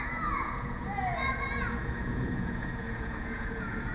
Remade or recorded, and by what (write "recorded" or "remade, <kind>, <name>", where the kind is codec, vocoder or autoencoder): remade, vocoder, Vocos